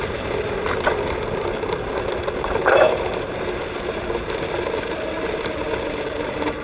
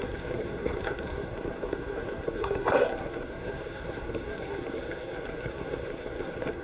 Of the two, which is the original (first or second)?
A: first